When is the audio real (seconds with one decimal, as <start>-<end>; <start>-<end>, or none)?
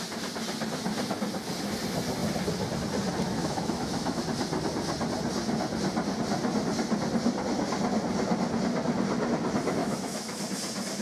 0.0-3.4; 4.2-9.8; 10.4-11.0